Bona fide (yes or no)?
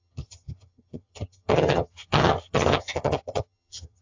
no